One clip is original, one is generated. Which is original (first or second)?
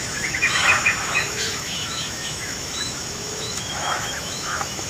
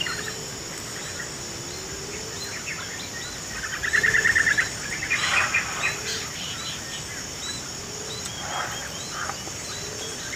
second